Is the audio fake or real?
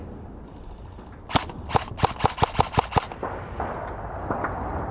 real